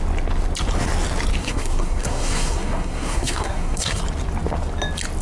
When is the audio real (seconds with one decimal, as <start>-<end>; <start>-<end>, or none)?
0.0-1.4; 4.0-5.2